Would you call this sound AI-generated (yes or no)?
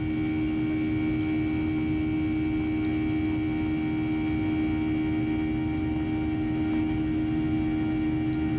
no